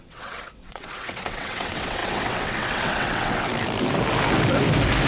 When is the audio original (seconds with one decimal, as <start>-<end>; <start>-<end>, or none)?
3.5-5.1